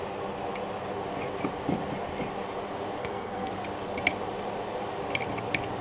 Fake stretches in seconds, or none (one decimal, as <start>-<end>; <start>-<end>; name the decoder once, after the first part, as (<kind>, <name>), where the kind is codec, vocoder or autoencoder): 3.0-3.5 (codec, SNAC)